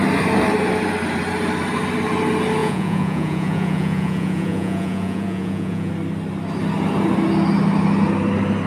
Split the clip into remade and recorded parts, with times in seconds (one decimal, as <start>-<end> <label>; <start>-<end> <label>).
0.0-2.6 recorded; 2.6-5.9 remade; 5.9-8.7 recorded